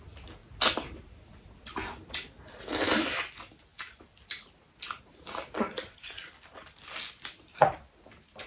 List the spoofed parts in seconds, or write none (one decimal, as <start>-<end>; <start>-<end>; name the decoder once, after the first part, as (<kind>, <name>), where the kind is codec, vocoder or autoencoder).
none